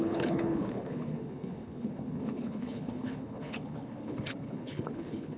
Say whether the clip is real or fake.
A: fake